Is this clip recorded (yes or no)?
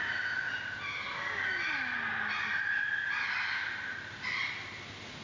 yes